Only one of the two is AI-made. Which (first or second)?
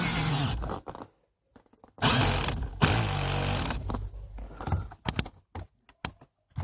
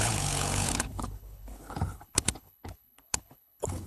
second